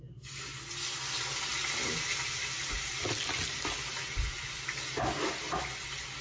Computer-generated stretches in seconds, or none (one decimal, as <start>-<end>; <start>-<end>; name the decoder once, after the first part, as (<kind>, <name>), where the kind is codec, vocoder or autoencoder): none